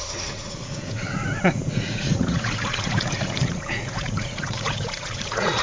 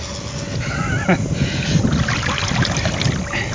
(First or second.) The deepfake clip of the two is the first